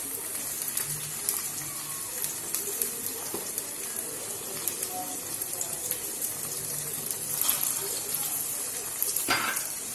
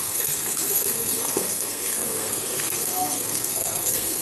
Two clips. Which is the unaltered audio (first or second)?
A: first